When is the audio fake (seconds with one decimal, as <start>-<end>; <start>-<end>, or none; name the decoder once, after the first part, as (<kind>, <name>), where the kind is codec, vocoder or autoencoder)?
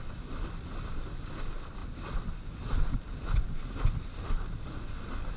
none